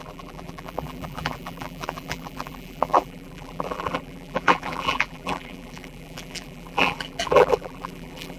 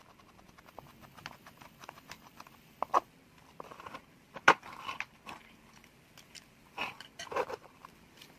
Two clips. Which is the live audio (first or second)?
second